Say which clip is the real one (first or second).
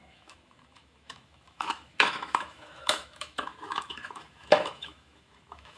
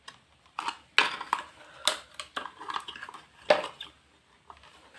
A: second